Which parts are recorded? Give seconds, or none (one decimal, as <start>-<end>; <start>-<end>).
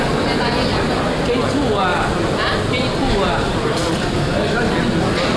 0.0-5.4